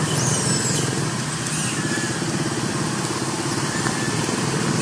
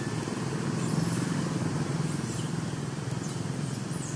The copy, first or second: second